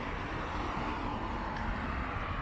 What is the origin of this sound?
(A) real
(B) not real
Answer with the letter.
A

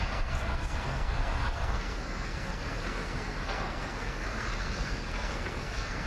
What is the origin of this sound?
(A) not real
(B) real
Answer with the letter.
A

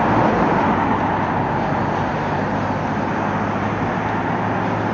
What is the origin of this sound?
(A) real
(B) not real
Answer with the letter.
A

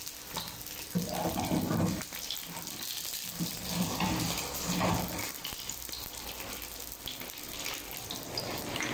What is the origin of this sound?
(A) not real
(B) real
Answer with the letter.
B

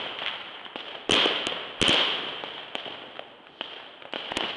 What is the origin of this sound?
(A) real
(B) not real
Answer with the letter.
A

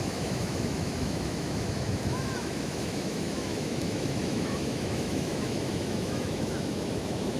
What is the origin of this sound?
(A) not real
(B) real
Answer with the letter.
A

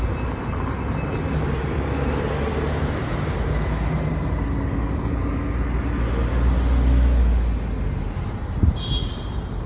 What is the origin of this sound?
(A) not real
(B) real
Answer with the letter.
B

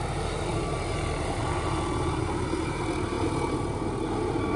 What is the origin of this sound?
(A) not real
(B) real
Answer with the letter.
B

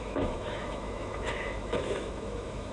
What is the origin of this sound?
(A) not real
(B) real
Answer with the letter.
A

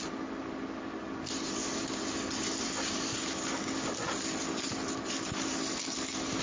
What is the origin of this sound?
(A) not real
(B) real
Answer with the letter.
B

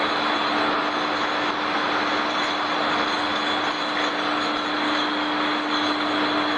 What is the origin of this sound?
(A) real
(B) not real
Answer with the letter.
A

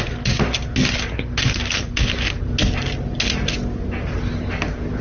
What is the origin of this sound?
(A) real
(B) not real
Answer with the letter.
A